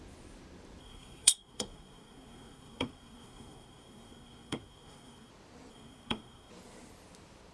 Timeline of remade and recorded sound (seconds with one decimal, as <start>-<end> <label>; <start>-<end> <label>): 0.0-0.8 recorded; 0.8-5.3 remade; 5.3-5.7 recorded; 5.7-6.5 remade; 6.5-7.5 recorded